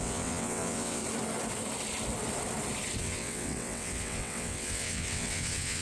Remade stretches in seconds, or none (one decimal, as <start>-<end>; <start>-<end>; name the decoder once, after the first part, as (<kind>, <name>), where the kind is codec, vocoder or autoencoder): 0.0-1.0 (vocoder, WaveNeXt); 3.0-5.8

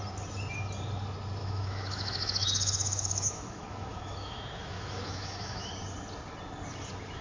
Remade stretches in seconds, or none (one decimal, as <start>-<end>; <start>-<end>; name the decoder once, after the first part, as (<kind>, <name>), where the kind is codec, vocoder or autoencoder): 1.4-5.7 (autoencoder, DAC-VAE)